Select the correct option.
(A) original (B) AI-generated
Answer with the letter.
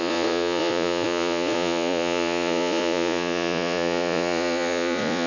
B